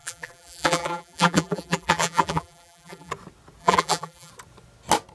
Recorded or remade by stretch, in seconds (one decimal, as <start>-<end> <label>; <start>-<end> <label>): 0.0-3.1 remade; 3.1-3.6 recorded; 3.6-4.3 remade; 4.3-5.1 recorded